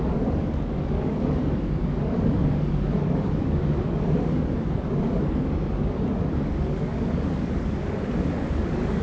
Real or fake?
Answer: fake